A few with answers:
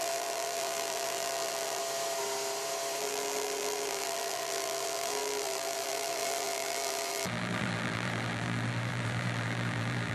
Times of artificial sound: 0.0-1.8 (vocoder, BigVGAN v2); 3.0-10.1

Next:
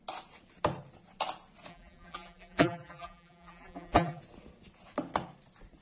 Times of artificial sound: 1.7-4.2 (vocoder, BigVGAN v2)

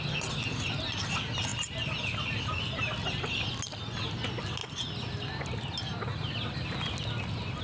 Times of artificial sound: none

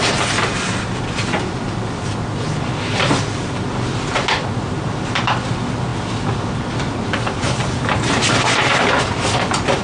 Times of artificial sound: none

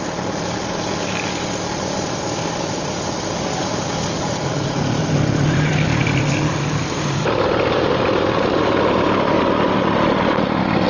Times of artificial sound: none

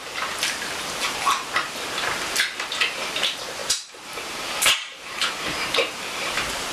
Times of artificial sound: 0.0-6.7 (vocoder, BigVGAN v2)

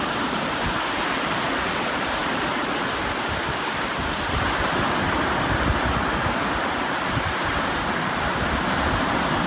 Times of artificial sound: none

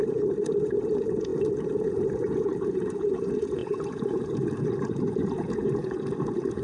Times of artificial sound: 0.0-6.6 (vocoder, Vocos)